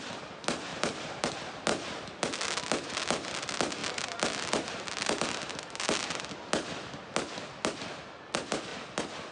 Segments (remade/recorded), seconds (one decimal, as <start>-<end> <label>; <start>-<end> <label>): 0.0-0.7 recorded; 0.7-1.3 remade; 1.3-9.3 recorded